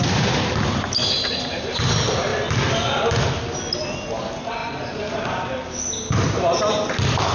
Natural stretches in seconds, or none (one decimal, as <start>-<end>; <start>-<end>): 0.0-7.3